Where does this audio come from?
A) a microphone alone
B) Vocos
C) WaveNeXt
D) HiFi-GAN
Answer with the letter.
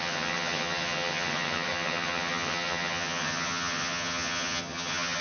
D